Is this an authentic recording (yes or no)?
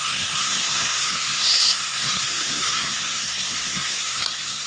no